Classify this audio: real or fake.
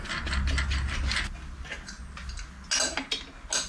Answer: real